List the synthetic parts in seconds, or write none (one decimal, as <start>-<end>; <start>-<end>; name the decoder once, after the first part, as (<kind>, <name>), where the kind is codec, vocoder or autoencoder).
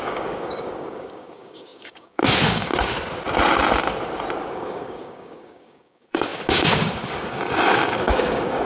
0.0-2.7 (codec, DAC); 4.5-8.7